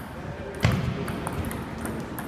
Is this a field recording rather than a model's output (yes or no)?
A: yes